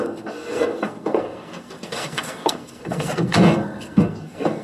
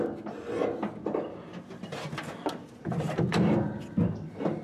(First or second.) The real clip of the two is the second